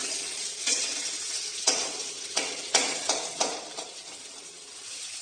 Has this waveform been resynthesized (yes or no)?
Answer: yes